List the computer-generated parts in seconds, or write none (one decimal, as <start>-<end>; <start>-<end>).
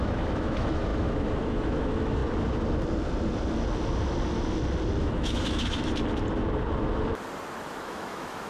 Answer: 0.0-2.2; 5.0-5.9; 7.7-8.5